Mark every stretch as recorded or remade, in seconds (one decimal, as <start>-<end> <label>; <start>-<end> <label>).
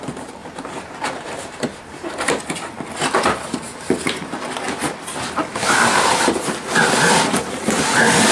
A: 0.0-0.4 recorded; 0.4-2.3 remade; 2.3-8.3 recorded